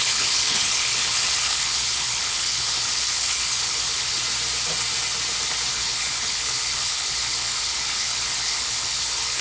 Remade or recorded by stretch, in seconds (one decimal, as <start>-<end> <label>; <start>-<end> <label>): 0.0-4.2 remade; 4.2-5.7 recorded; 5.7-9.4 remade

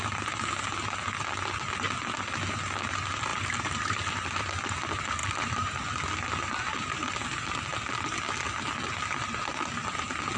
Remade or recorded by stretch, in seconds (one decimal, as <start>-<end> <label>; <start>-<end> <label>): 0.0-3.3 recorded; 3.3-4.4 remade; 4.4-10.4 recorded